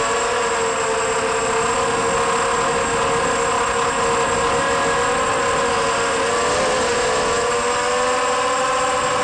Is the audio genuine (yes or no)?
yes